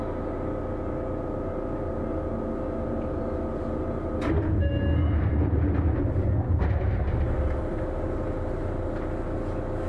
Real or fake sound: real